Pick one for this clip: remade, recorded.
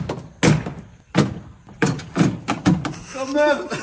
recorded